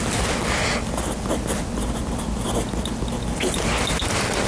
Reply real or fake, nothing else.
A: real